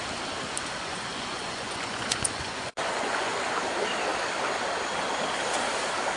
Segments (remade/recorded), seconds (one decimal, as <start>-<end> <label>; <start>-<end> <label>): 0.0-0.6 recorded; 0.6-3.4 remade; 3.4-6.2 recorded